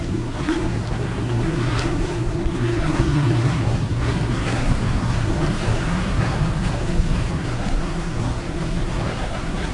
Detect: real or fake fake